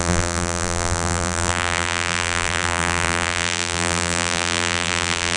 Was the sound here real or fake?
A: fake